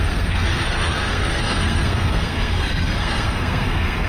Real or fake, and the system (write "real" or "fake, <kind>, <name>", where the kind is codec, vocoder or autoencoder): fake, codec, SNAC